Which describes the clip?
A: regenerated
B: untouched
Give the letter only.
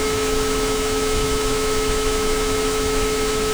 A